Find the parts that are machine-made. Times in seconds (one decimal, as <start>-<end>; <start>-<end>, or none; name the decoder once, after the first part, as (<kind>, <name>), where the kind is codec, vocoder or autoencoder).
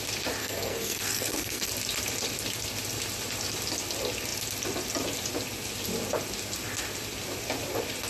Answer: 0.4-1.7 (codec, SNAC)